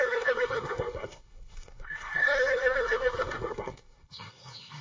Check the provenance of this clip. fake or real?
fake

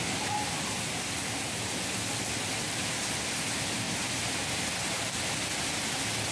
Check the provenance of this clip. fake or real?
real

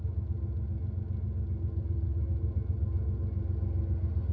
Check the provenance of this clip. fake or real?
real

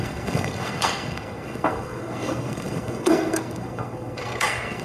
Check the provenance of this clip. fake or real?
fake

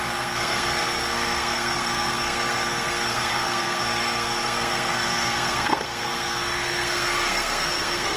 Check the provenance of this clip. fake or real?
fake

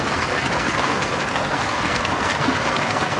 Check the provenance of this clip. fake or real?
fake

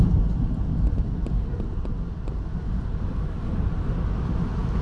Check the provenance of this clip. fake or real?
real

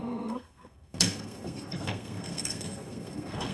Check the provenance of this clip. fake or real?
fake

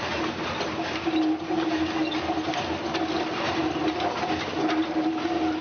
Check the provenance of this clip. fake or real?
real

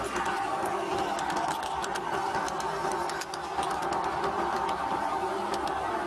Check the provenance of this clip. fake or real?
real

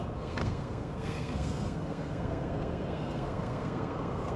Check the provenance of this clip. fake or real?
fake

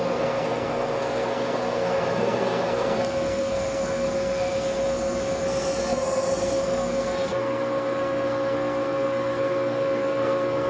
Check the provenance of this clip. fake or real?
fake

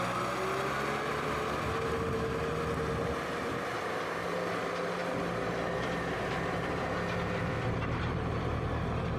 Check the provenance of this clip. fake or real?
real